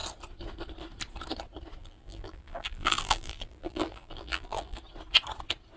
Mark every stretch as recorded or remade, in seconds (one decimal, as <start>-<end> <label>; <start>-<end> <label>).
0.0-1.8 recorded; 1.8-4.8 remade; 4.8-5.8 recorded